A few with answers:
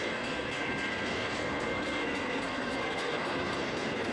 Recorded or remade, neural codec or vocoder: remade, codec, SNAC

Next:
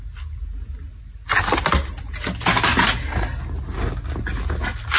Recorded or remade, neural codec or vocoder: recorded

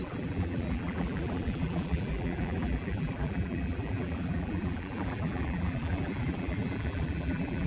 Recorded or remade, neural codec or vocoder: remade, vocoder, BigVGAN v2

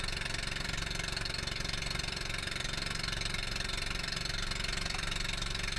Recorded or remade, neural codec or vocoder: remade, vocoder, BigVGAN v2